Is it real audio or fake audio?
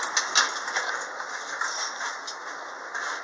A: real